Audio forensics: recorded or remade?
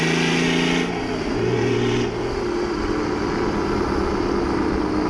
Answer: recorded